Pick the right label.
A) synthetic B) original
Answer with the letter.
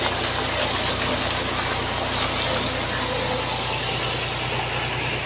B